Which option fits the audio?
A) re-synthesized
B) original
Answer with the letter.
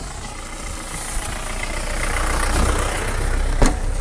B